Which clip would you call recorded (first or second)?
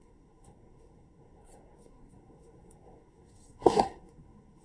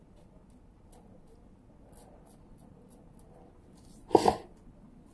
second